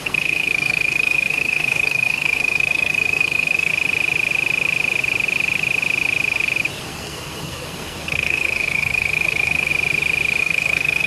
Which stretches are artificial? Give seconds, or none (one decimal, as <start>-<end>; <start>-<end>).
0.0-3.7; 6.8-9.7; 10.4-11.1